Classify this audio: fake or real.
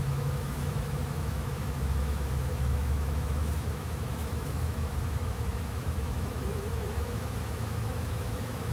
fake